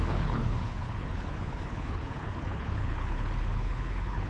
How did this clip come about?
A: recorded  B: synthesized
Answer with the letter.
B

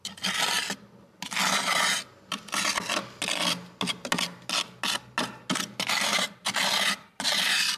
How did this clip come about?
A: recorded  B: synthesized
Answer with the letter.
A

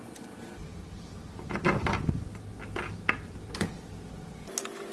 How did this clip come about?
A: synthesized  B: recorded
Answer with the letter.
B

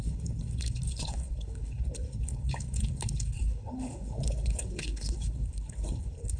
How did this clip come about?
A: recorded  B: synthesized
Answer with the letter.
B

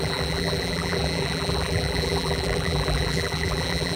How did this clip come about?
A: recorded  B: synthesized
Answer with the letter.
B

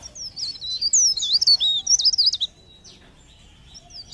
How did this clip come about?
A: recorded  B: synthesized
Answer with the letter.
A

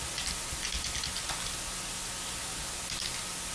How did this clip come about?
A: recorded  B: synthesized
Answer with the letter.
A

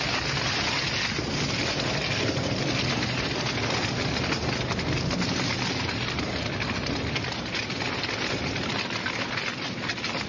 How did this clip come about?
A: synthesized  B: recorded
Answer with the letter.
B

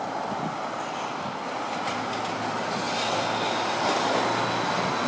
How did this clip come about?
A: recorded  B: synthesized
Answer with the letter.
A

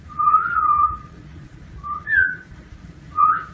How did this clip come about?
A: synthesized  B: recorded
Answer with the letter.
A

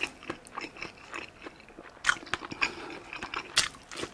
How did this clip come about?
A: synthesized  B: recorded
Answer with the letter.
B